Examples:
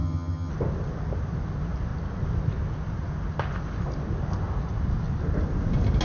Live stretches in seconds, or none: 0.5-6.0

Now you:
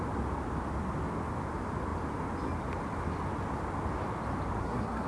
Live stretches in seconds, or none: 0.0-4.6